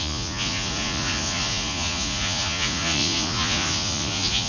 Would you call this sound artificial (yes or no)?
yes